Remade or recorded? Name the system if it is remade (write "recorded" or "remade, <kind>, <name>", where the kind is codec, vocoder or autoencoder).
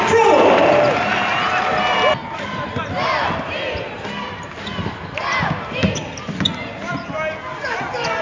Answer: recorded